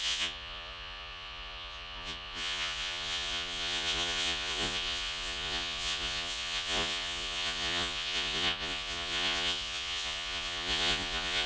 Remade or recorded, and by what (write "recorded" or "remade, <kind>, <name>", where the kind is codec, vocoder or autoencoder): remade, vocoder, Vocos